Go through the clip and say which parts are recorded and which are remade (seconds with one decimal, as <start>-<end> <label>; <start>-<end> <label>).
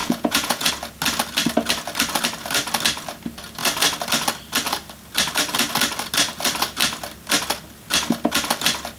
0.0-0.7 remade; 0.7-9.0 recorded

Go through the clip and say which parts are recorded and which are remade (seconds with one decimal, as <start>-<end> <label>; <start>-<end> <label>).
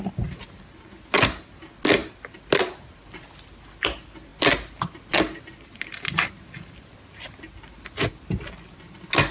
0.0-9.3 recorded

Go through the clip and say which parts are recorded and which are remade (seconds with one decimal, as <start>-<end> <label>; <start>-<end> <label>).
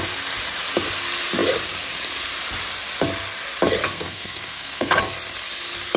0.0-3.8 recorded; 3.8-5.0 remade; 5.0-6.0 recorded